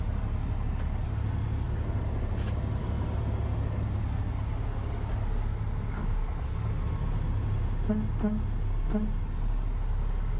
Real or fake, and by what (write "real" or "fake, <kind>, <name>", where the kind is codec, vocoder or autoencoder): real